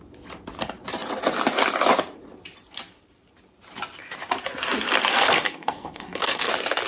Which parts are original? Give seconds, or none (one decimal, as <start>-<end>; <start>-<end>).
0.0-5.1; 6.5-6.9